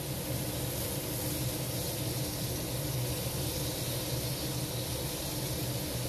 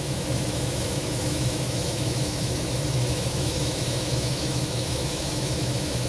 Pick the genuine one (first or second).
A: first